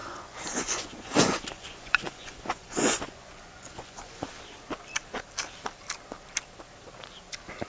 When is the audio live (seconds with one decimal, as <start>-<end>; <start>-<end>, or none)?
4.3-7.7